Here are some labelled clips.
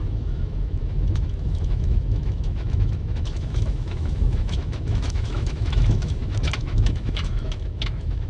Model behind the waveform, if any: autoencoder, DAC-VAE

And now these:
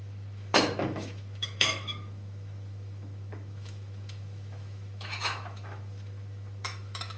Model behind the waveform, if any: autoencoder, DAC-VAE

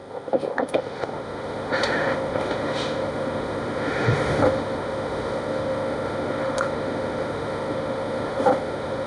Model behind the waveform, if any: autoencoder, DAC-VAE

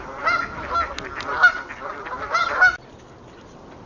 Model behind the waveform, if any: none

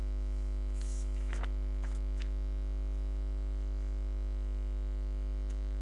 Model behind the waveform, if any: autoencoder, DAC-VAE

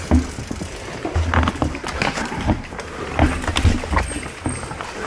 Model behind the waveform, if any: none